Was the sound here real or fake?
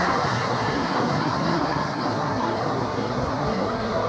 fake